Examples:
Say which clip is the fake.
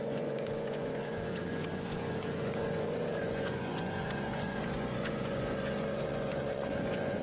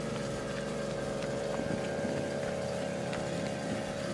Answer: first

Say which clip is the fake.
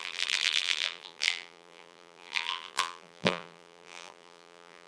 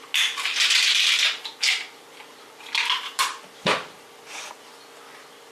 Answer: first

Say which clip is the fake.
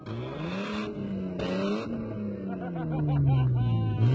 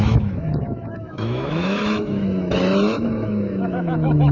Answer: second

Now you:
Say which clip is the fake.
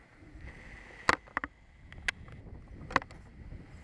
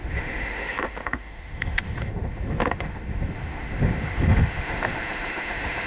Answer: second